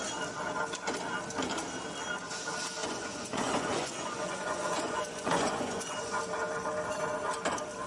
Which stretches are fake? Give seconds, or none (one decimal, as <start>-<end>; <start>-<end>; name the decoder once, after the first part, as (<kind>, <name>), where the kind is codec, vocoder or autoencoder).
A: 2.8-6.2 (vocoder, Vocos)

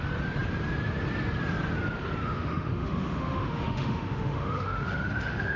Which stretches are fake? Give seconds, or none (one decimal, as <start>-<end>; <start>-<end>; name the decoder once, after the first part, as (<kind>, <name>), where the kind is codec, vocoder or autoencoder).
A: 2.2-5.6 (autoencoder, DAC-VAE)

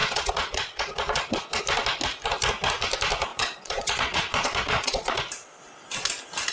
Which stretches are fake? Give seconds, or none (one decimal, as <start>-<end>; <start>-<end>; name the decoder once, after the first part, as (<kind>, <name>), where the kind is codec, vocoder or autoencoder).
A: 0.0-1.6 (vocoder, Vocos); 3.3-5.2

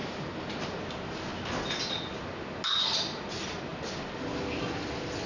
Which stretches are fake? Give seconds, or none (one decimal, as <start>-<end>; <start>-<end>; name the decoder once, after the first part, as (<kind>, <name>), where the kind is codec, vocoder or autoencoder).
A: none

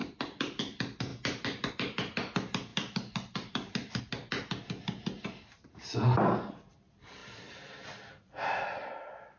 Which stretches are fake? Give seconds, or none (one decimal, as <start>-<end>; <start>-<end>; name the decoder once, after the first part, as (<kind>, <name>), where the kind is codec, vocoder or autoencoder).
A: 0.0-0.6 (vocoder, BigVGAN v2); 2.7-4.0; 7.2-9.4

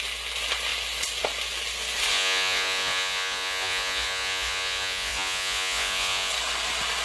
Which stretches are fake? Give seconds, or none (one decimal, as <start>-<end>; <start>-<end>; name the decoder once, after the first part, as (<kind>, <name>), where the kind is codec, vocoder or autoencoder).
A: 2.1-6.3 (vocoder, Vocos)

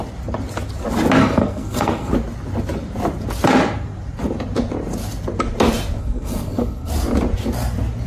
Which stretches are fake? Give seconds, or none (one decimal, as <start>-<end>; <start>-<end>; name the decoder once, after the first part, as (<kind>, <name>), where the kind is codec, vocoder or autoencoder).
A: 1.2-2.1 (codec, SNAC); 6.0-6.9